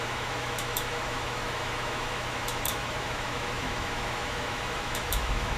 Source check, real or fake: fake